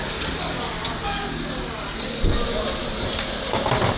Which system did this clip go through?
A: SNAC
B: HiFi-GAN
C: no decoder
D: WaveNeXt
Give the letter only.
C